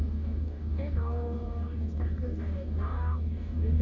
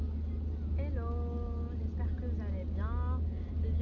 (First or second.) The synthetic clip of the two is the first